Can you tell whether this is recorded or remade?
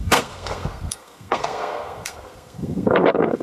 remade